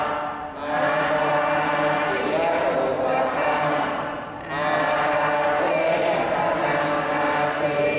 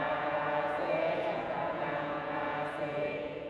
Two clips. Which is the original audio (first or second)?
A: first